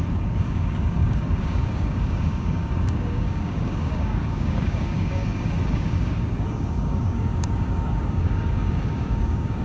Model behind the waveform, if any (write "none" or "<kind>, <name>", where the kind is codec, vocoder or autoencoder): codec, DAC